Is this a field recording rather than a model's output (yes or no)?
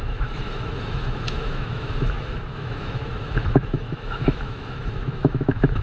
no